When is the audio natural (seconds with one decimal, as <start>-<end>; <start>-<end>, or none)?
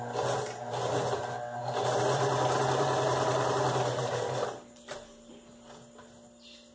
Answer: 0.0-1.6; 5.3-6.7